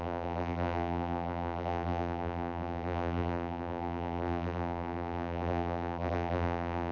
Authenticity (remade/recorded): remade